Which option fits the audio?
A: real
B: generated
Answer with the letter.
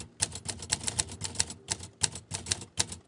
A